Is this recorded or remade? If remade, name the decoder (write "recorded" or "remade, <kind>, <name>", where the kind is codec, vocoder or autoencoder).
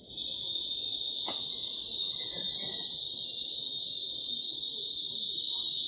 recorded